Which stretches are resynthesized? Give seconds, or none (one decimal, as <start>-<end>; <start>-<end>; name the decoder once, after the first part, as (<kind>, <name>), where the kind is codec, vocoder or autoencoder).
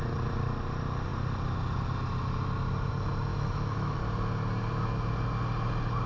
3.3-4.0 (autoencoder, DAC-VAE)